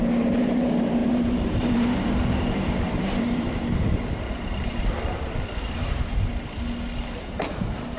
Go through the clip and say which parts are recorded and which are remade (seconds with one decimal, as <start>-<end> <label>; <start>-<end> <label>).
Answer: 0.0-6.3 remade; 6.3-7.2 recorded; 7.2-8.0 remade